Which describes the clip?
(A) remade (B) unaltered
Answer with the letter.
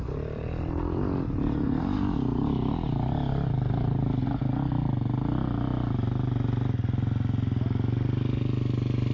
B